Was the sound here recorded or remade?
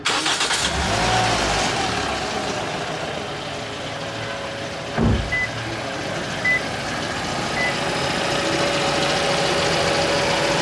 recorded